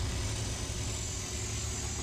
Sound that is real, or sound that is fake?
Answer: real